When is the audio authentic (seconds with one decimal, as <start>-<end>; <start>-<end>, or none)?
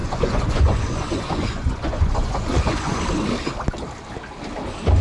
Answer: 3.0-5.0